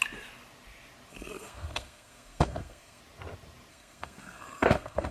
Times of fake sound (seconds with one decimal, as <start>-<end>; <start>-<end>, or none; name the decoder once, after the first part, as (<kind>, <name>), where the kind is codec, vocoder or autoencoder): 1.1-3.0 (codec, SNAC); 3.7-5.1